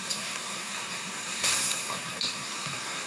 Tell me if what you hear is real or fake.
fake